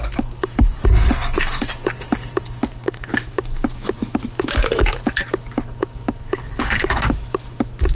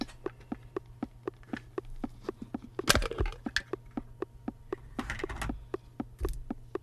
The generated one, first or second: first